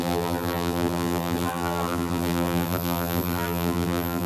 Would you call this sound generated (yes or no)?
yes